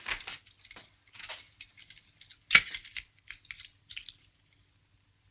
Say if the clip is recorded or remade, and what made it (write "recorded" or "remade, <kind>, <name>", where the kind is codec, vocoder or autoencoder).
recorded